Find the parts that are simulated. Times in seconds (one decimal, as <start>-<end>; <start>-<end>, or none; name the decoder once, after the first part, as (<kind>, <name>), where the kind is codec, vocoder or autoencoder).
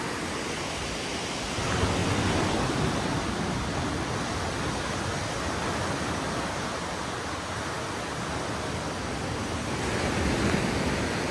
none